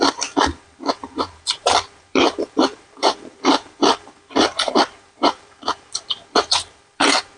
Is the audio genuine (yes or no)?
no